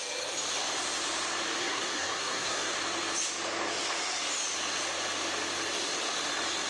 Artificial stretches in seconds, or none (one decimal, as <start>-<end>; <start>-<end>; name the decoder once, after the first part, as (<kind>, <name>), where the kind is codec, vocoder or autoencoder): 1.6-2.7 (codec, SNAC)